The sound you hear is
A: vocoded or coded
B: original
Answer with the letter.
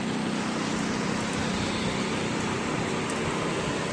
B